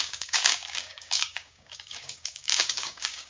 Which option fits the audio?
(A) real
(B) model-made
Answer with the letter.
B